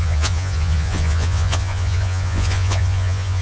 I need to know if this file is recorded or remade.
remade